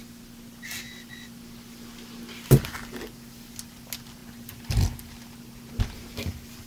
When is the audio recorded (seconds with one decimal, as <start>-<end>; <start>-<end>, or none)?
0.0-6.7